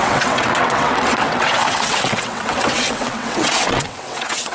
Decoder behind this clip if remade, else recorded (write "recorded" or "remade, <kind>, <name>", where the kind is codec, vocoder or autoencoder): remade, vocoder, WaveNeXt